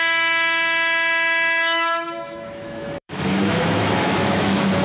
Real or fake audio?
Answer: fake